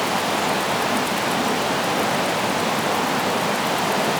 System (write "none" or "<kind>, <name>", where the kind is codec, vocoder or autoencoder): none